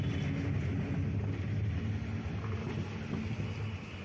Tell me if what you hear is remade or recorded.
recorded